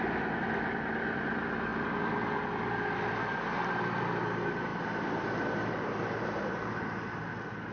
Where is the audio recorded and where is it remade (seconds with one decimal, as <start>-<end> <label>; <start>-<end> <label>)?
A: 0.0-7.7 recorded